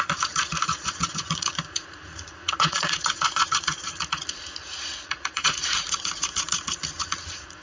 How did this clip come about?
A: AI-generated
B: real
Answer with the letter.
A